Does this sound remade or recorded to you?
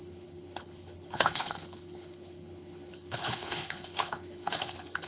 remade